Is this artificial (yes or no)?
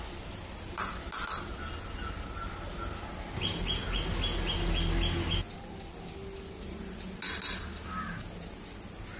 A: no